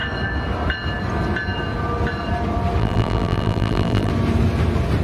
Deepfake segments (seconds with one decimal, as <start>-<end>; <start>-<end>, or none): 2.8-4.1